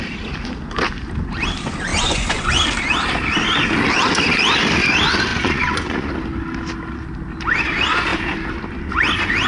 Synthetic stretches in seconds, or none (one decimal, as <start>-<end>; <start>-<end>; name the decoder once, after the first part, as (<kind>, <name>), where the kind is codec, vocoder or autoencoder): 1.9-2.5 (vocoder, Vocos); 5.3-6.1

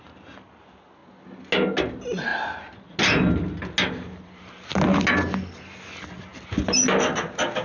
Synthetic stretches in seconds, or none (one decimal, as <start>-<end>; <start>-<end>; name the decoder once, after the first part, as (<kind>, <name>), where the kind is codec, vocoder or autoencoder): none

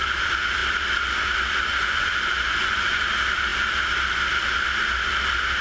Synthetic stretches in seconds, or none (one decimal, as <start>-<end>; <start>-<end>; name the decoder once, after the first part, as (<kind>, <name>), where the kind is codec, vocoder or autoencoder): 1.7-3.0 (vocoder, Vocos)

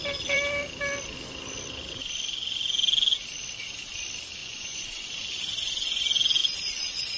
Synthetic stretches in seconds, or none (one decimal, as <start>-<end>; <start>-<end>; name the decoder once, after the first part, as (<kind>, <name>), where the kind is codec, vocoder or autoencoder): 4.4-5.1 (vocoder, Vocos)

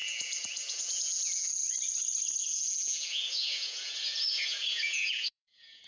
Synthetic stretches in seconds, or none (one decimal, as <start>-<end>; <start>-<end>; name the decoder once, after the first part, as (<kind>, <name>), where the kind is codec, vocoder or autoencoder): 0.0-1.6 (vocoder, Vocos); 2.4-5.9

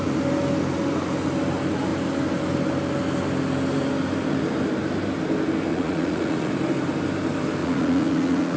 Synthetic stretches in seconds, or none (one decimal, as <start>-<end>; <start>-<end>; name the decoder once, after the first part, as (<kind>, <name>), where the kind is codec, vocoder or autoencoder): 5.7-6.5 (vocoder, Vocos); 7.6-8.6